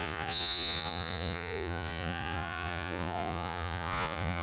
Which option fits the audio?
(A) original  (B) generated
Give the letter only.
B